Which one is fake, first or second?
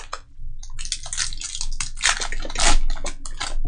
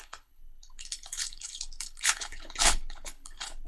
second